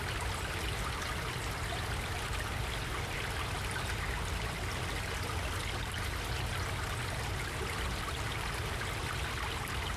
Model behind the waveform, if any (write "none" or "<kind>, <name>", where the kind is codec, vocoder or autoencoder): none